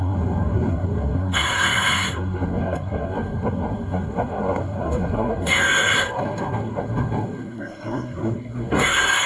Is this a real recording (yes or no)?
no